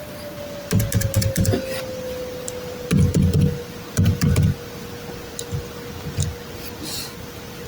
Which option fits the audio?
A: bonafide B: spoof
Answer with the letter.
A